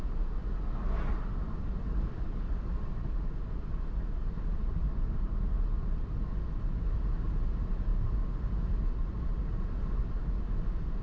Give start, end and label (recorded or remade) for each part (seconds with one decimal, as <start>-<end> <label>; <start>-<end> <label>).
0.0-11.0 recorded